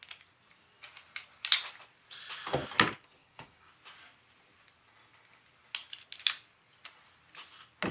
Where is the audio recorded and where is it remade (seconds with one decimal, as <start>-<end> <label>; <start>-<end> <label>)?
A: 0.0-3.2 recorded; 3.2-3.7 remade; 3.7-7.9 recorded